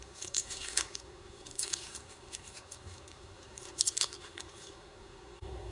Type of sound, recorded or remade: remade